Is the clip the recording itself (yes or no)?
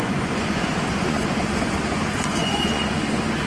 no